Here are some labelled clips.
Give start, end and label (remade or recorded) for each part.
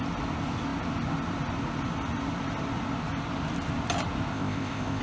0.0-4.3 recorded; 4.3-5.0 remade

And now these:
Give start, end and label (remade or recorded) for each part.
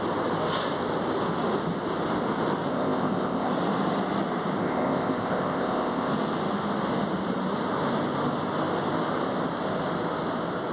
0.0-2.7 recorded; 2.7-3.5 remade; 3.5-4.6 recorded; 4.6-6.1 remade; 6.1-10.7 recorded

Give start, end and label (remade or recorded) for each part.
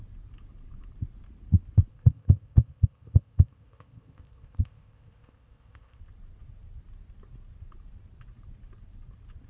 0.0-1.9 recorded; 1.9-6.0 remade; 6.0-9.5 recorded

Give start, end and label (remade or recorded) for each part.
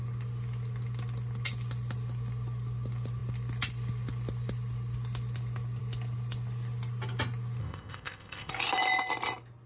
0.0-7.6 recorded; 7.6-8.5 remade; 8.5-9.7 recorded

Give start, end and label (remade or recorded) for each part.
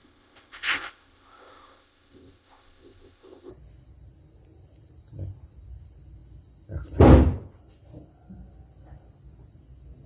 0.0-3.5 remade; 3.5-10.1 recorded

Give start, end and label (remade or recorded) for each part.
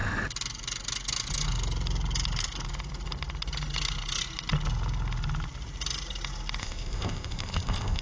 0.0-6.6 recorded; 6.6-8.0 remade